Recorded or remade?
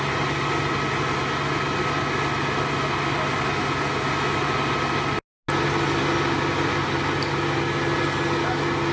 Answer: recorded